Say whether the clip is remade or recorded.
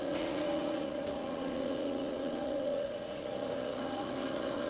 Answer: remade